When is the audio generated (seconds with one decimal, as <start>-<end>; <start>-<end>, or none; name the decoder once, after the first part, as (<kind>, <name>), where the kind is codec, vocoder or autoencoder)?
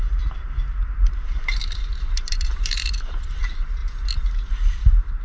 1.0-3.3 (vocoder, BigVGAN v2)